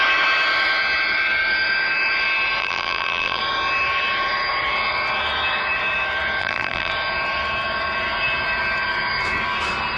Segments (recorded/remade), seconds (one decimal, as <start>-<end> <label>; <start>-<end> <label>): 0.0-2.6 recorded; 2.6-3.4 remade; 3.4-6.4 recorded; 6.4-6.9 remade; 6.9-10.0 recorded